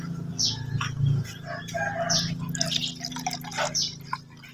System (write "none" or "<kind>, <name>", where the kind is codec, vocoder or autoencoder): none